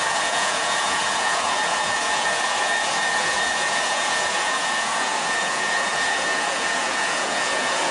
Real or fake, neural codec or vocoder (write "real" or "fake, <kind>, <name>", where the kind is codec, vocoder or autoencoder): fake, vocoder, Vocos